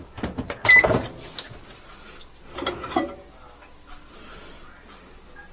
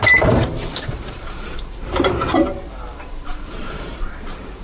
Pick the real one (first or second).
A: first